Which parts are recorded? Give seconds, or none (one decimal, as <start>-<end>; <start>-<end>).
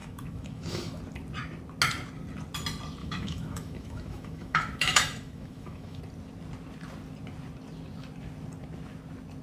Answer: 1.0-3.0; 6.0-9.4